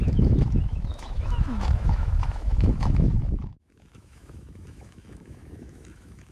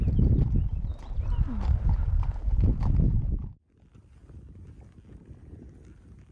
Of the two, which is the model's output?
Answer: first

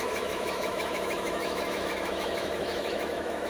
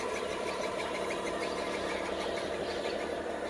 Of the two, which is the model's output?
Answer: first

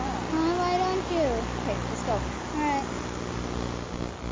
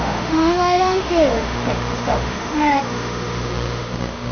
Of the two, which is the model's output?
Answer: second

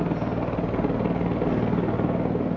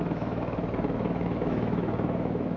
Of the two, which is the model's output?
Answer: second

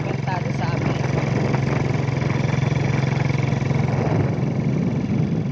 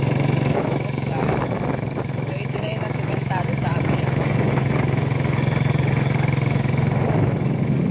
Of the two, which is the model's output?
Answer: second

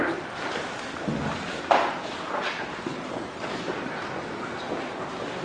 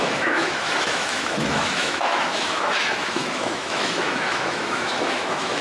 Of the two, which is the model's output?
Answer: second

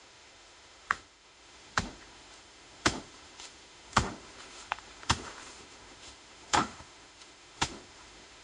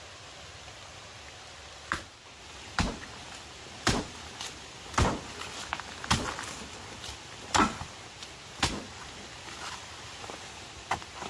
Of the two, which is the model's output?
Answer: first